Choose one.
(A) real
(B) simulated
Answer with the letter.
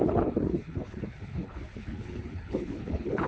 B